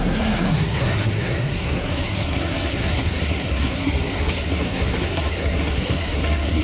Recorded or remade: remade